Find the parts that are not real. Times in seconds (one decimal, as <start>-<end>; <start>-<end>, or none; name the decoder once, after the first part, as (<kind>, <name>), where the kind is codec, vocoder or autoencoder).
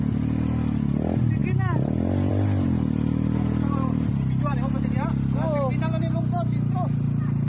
none